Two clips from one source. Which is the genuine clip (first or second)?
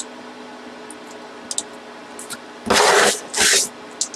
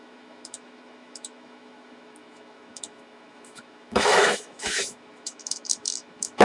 first